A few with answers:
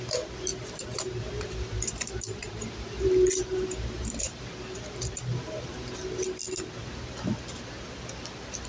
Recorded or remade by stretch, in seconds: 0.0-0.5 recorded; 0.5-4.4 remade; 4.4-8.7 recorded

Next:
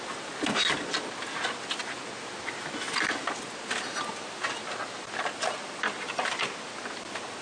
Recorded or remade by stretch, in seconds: 0.0-7.4 recorded

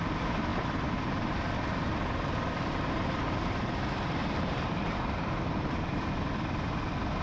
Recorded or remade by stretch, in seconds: 0.0-0.5 recorded; 0.5-2.9 remade; 2.9-4.2 recorded; 4.2-6.3 remade; 6.3-7.2 recorded